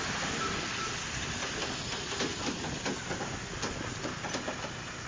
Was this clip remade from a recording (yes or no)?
no